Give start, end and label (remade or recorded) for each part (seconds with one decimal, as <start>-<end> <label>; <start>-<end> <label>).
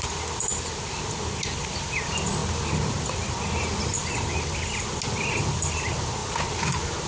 0.0-7.1 recorded